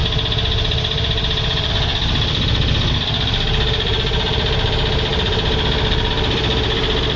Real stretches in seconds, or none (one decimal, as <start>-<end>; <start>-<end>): none